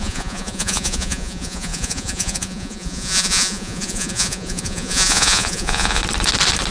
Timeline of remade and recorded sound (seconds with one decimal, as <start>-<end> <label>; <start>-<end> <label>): 0.0-6.0 remade; 6.0-6.7 recorded